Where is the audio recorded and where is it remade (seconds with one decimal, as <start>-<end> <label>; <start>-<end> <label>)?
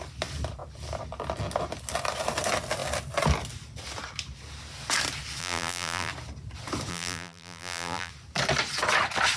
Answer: 0.0-5.4 recorded; 5.4-6.1 remade; 6.1-6.9 recorded; 6.9-8.1 remade; 8.1-9.4 recorded